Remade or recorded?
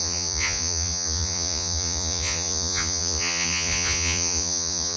remade